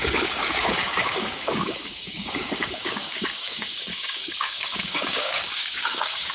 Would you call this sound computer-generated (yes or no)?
yes